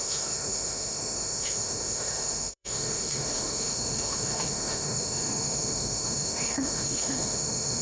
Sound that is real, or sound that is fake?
fake